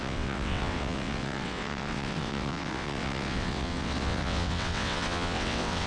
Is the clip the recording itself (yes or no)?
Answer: no